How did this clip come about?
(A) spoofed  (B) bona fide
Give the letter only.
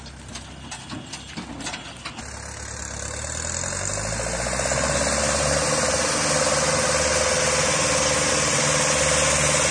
B